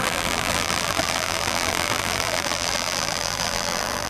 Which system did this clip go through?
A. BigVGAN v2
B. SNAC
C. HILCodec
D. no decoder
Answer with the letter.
A